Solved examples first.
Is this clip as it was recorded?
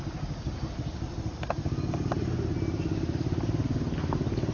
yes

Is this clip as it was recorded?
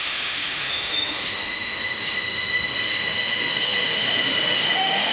no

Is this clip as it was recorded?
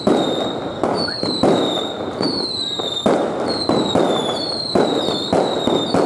yes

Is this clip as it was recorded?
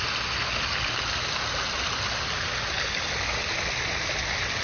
yes